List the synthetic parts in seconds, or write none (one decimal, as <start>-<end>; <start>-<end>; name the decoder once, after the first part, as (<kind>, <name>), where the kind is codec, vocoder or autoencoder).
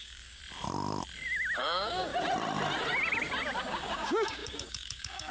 0.0-0.4 (codec, DAC); 1.6-2.1; 3.6-5.3